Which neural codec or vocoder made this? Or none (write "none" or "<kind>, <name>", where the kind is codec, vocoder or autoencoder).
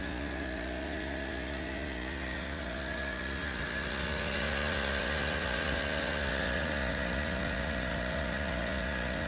vocoder, Vocos